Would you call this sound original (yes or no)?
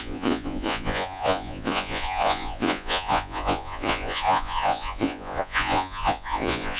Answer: no